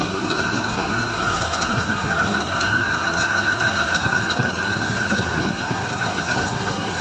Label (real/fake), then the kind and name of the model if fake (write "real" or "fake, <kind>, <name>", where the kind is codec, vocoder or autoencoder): fake, codec, SNAC